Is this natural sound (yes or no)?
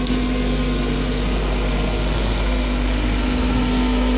no